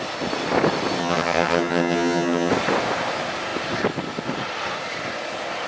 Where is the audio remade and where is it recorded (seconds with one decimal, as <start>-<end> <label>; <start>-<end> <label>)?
0.0-1.0 recorded; 1.0-2.5 remade; 2.5-5.7 recorded